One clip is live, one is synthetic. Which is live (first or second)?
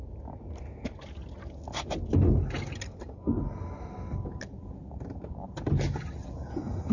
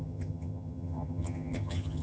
first